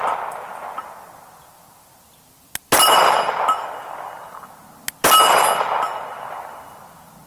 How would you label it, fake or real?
real